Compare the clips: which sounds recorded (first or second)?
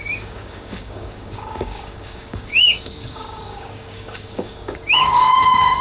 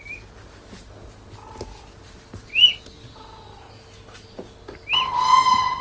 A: second